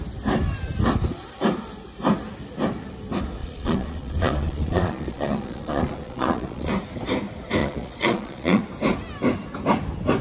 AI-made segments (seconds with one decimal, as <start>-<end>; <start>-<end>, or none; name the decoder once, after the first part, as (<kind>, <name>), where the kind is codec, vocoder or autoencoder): 3.4-6.7 (vocoder, Vocos); 7.6-8.6